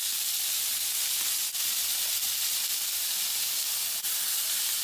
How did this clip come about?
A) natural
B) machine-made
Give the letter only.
A